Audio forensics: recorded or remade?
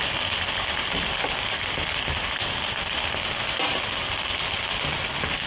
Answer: recorded